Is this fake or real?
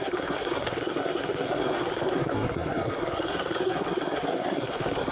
fake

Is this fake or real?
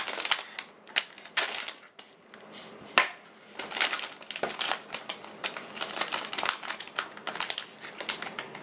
real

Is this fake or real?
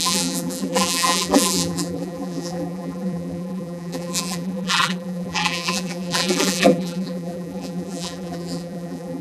fake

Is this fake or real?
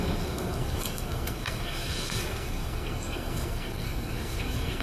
fake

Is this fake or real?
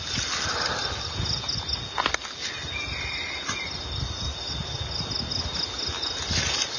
real